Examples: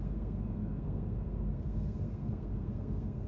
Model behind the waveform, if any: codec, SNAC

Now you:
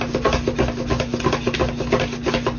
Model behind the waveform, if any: none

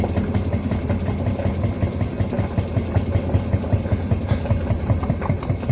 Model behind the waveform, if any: none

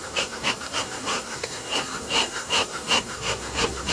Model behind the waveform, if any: codec, SNAC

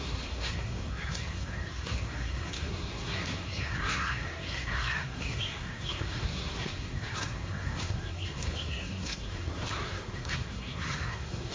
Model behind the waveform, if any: codec, SNAC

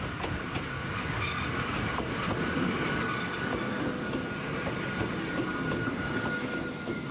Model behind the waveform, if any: none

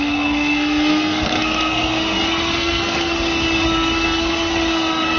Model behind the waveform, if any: codec, SNAC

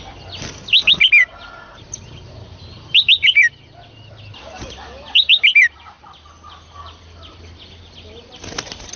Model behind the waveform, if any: none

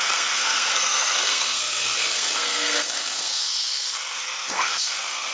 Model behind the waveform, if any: codec, SNAC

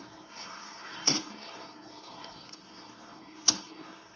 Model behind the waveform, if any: codec, SNAC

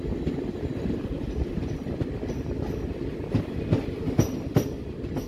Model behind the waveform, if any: none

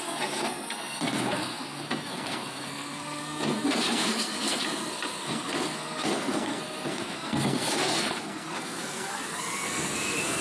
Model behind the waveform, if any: codec, SNAC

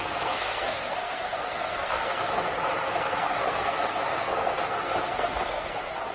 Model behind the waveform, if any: codec, SNAC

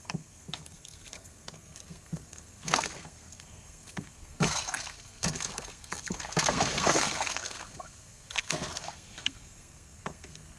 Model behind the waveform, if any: codec, SNAC